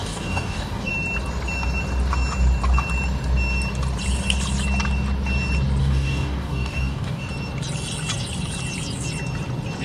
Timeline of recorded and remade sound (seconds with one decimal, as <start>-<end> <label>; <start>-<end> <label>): 0.0-0.9 remade; 0.9-5.8 recorded; 5.8-7.3 remade; 7.3-9.8 recorded